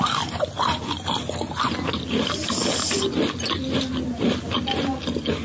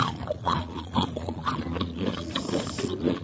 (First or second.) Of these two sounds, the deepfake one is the second